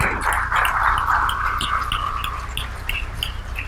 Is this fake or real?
real